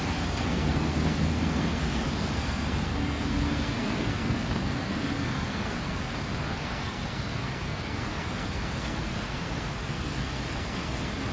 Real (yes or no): no